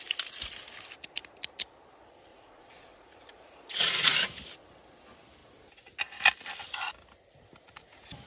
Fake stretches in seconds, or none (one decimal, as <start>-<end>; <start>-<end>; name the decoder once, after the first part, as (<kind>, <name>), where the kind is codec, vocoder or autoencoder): 2.3-4.1 (vocoder, Vocos)